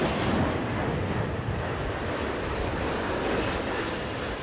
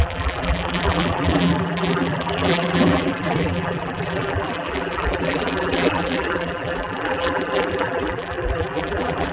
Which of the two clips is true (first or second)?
first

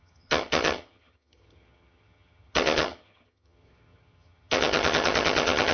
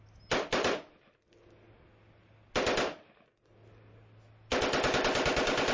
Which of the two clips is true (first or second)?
second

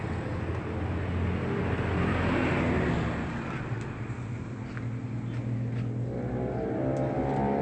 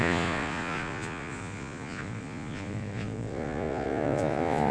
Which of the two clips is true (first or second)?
first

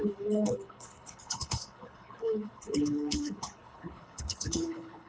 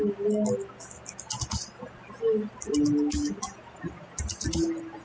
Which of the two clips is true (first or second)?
second